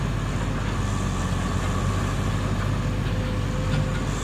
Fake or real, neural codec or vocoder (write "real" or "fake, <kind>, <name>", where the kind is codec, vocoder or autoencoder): real